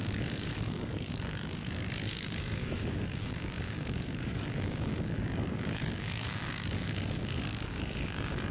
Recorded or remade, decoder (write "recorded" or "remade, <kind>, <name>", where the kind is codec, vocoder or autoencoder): remade, codec, DAC